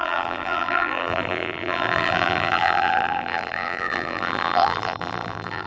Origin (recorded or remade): remade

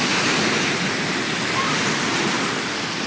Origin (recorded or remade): recorded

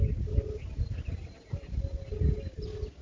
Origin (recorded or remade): recorded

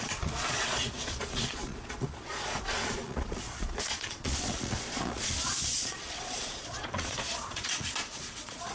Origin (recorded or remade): remade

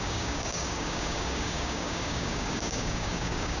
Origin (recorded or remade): remade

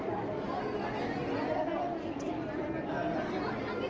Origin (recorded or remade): recorded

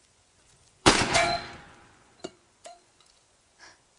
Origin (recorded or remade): remade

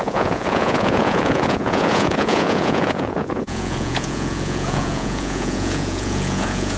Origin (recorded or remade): remade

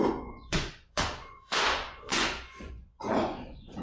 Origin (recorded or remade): remade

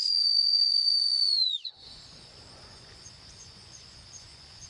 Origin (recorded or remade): remade